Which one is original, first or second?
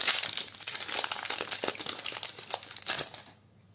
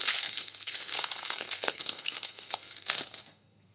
first